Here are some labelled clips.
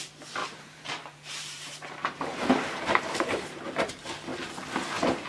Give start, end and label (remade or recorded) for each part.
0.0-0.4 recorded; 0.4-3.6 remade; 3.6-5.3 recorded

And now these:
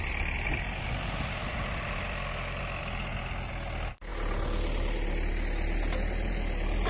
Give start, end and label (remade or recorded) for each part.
0.0-6.9 recorded